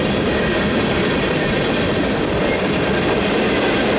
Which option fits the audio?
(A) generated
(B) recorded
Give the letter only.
A